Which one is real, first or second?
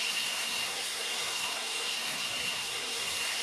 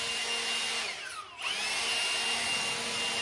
second